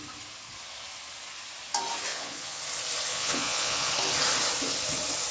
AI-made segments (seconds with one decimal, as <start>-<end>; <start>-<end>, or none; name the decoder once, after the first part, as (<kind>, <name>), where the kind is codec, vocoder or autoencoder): 2.1-2.6 (vocoder, Vocos); 3.1-3.9